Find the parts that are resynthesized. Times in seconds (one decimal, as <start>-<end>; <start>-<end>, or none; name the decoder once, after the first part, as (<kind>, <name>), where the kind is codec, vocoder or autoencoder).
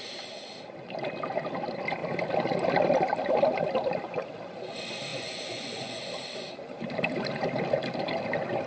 5.1-6.1 (vocoder, Vocos)